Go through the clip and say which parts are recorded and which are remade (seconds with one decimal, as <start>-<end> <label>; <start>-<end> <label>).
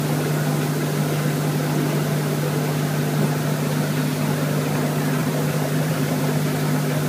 0.0-5.2 recorded; 5.2-6.2 remade; 6.2-7.1 recorded